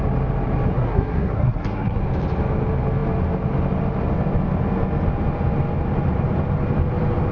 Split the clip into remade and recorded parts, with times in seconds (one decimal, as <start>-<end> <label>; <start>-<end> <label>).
0.0-0.7 recorded; 0.7-2.0 remade; 2.0-7.3 recorded